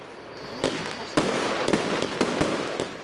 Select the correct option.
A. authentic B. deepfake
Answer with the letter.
A